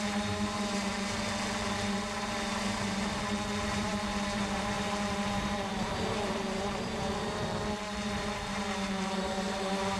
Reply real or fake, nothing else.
fake